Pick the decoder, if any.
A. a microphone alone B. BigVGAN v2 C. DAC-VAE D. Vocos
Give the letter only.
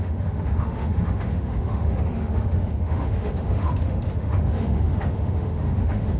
C